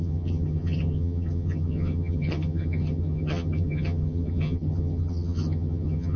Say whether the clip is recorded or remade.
remade